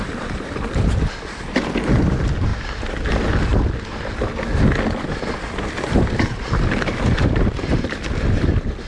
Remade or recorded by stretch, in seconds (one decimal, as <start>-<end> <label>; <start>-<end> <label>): 0.0-2.5 remade; 2.5-5.2 recorded; 5.2-8.9 remade